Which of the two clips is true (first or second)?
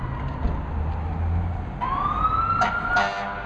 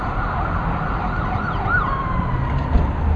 first